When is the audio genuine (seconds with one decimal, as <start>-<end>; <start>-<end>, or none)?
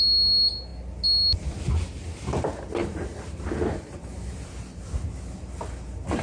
0.0-2.8; 4.8-6.2